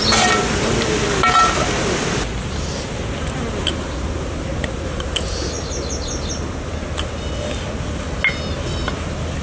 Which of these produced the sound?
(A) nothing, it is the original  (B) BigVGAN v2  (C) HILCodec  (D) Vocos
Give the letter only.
A